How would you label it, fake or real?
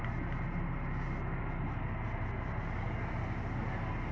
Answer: real